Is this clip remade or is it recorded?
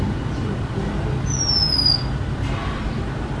recorded